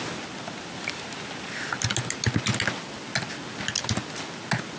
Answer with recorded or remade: recorded